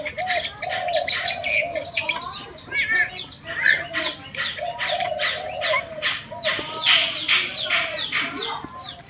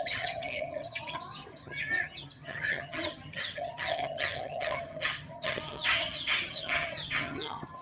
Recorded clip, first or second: first